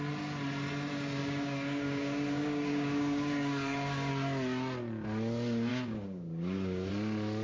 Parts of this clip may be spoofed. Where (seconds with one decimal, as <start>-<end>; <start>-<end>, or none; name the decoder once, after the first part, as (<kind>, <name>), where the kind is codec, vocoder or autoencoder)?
1.2-4.1 (codec, DAC); 5.7-6.9